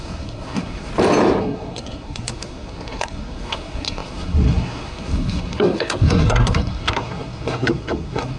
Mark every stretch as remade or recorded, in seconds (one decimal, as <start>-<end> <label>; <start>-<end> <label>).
0.0-0.9 remade; 0.9-1.4 recorded; 1.4-8.4 remade